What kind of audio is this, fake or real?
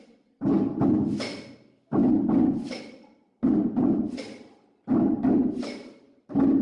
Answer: real